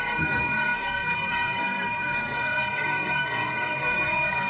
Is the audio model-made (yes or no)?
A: yes